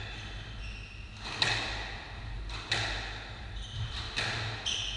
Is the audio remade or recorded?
recorded